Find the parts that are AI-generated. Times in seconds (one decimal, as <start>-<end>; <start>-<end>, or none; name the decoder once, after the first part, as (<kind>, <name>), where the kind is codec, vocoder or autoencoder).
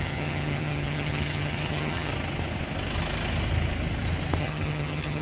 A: 0.0-2.1 (vocoder, HiFi-GAN); 4.4-5.2